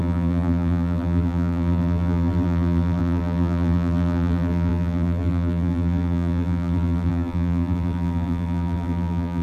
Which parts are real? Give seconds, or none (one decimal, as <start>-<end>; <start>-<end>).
none